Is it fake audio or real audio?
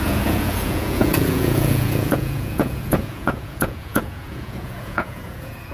fake